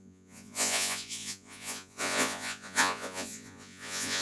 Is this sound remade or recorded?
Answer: remade